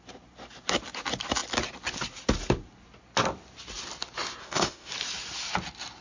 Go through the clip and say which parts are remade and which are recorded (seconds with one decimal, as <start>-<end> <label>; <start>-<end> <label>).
0.0-4.4 recorded; 4.4-4.9 remade; 4.9-6.0 recorded